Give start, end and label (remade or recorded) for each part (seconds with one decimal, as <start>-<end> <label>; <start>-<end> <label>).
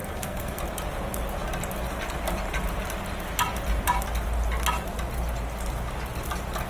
0.0-0.6 remade; 0.6-6.7 recorded